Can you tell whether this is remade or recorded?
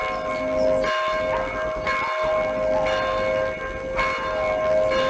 recorded